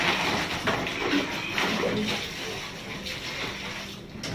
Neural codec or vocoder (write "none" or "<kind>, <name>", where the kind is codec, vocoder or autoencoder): none